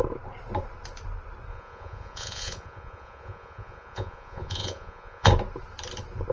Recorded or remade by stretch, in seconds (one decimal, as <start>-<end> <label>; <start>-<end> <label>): 0.0-1.5 recorded; 1.5-5.3 remade; 5.3-6.3 recorded